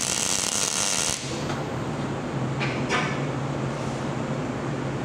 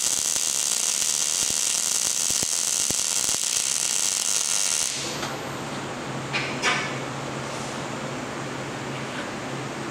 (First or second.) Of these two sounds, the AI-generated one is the first